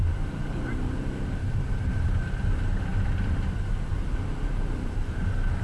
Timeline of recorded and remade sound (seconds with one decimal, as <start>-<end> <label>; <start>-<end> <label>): 0.0-5.6 recorded